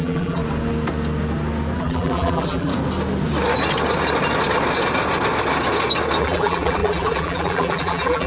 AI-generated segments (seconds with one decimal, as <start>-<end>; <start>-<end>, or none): 0.0-0.4; 1.8-2.7; 6.2-8.3